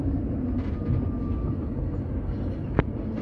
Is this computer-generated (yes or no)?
no